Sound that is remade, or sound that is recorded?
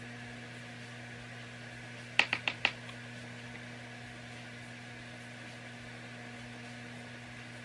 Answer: recorded